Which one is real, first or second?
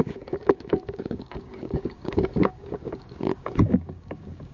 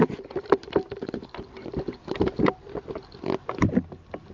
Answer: second